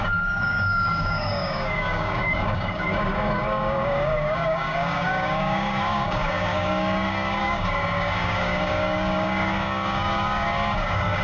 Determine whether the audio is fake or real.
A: fake